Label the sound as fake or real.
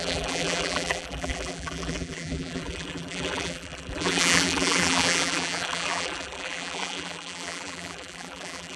fake